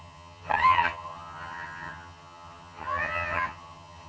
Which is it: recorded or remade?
remade